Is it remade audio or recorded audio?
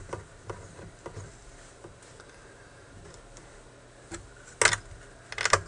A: recorded